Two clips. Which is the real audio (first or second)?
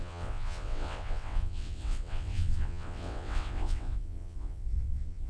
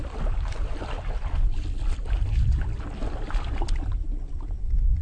second